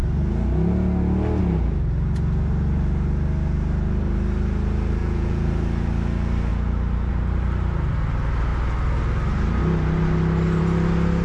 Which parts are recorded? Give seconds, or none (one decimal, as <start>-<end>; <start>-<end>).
0.0-5.0; 5.5-11.2